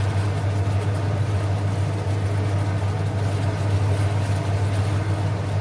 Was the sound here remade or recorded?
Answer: recorded